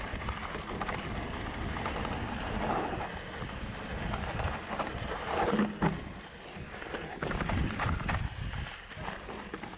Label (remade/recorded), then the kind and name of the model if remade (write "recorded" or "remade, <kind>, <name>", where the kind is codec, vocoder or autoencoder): recorded